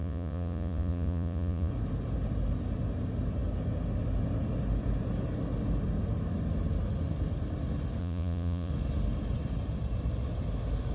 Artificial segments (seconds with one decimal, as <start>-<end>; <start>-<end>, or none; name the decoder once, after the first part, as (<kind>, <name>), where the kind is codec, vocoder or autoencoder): 0.0-1.7 (vocoder, Vocos); 8.0-8.7